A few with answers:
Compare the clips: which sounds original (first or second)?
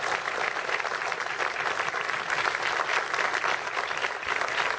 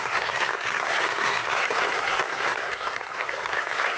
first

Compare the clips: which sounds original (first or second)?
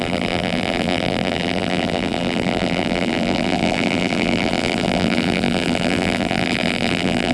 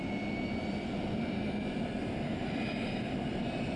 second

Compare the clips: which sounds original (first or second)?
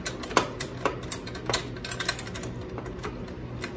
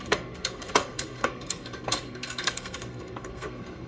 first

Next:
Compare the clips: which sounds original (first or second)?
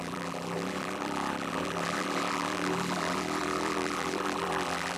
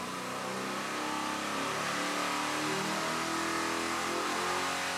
second